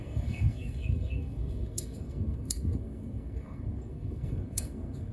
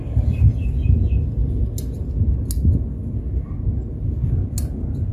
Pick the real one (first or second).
second